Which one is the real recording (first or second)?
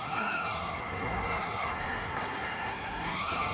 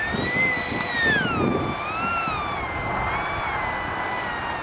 second